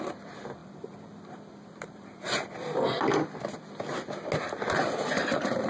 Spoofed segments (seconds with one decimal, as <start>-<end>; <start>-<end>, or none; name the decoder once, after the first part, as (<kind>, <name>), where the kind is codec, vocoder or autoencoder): 0.6-2.5 (vocoder, BigVGAN v2)